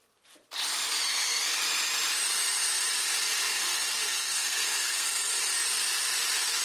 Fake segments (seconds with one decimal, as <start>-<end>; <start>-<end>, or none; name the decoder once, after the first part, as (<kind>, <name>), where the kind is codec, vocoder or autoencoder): 1.1-1.6 (codec, SNAC); 3.5-5.4